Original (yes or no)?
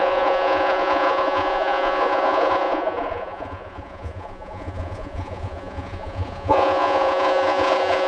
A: no